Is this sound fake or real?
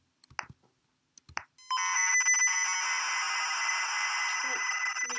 real